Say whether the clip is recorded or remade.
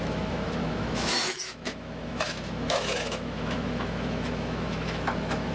remade